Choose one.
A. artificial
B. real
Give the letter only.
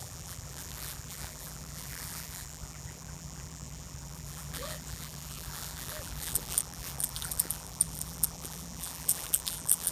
A